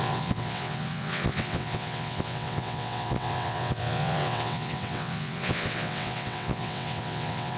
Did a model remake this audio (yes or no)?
yes